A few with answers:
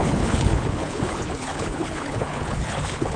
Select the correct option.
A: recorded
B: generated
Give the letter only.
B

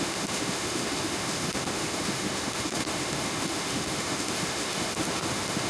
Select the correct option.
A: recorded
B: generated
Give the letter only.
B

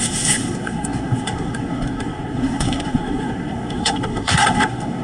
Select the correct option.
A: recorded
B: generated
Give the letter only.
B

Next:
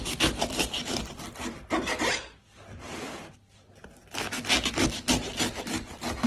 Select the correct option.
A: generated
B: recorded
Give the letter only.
B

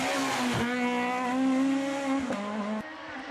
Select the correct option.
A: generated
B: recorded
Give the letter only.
B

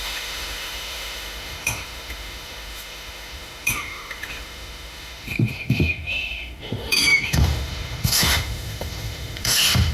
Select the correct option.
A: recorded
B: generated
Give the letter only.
B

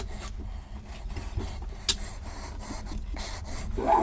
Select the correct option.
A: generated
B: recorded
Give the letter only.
B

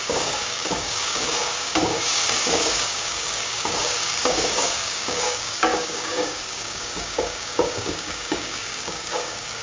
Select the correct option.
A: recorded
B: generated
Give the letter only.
B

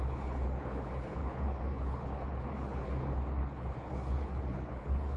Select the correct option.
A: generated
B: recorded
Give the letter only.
A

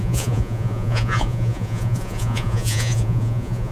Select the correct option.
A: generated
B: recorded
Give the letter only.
A